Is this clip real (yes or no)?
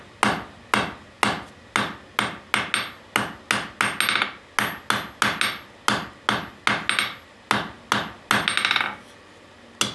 yes